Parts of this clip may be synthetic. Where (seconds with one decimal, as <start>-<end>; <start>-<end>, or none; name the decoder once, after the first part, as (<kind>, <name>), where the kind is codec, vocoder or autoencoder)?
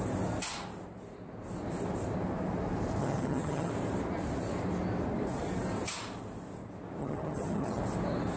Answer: 3.0-3.7 (vocoder, HiFi-GAN); 7.0-7.8